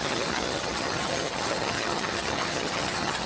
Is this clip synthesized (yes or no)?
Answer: yes